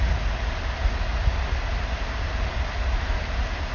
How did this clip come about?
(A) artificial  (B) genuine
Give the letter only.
B